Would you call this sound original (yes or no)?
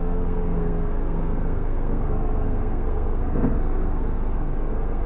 no